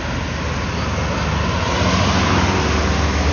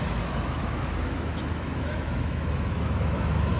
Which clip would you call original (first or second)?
first